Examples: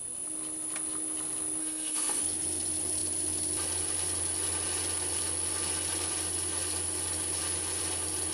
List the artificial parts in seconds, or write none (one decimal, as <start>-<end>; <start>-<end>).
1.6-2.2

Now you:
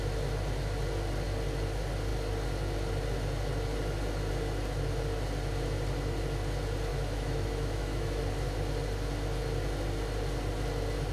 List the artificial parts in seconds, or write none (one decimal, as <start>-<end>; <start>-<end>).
6.9-8.2

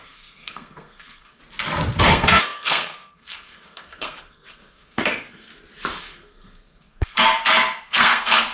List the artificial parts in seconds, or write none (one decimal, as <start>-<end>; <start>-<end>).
0.0-1.4; 2.0-5.5; 6.0-7.2; 7.8-8.5

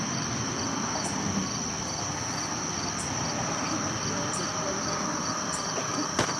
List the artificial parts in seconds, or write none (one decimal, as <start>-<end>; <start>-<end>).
none

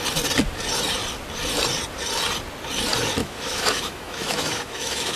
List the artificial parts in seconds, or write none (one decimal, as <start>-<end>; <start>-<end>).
3.2-5.2

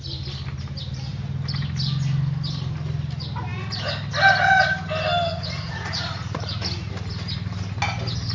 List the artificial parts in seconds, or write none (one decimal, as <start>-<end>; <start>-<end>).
5.3-6.9